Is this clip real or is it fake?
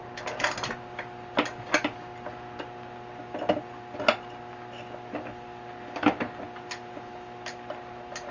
real